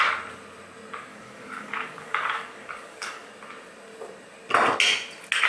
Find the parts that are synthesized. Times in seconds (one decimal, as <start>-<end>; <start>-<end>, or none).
1.1-3.3